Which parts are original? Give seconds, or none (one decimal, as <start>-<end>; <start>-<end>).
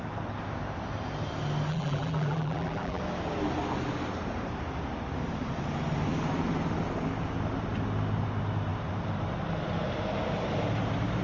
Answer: 0.0-1.7; 3.0-11.2